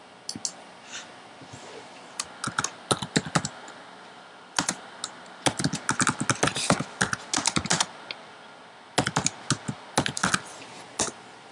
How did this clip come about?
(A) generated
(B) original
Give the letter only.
B